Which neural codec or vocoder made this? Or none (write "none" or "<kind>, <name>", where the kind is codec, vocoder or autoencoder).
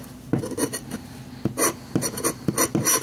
none